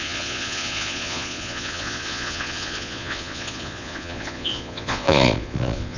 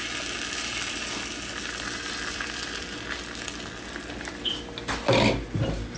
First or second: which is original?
second